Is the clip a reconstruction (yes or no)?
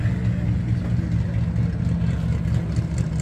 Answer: no